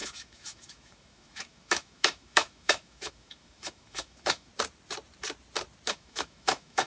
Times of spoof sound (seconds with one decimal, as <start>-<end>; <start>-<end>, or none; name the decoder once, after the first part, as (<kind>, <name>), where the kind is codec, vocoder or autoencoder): 0.0-4.5 (autoencoder, DAC-VAE); 5.9-6.9